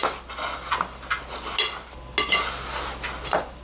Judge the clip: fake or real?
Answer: real